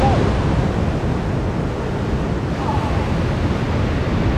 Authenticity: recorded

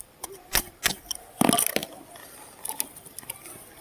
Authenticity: recorded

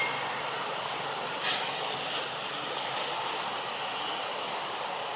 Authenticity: recorded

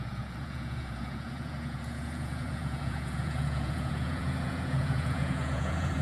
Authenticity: remade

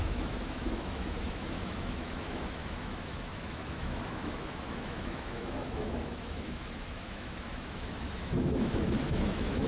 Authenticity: remade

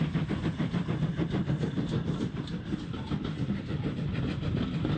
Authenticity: recorded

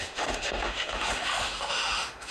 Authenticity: remade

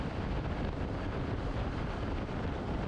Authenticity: remade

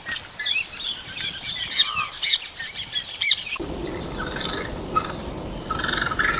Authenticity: remade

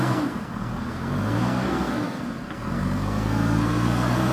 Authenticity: remade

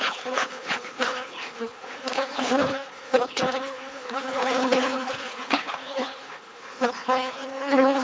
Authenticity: remade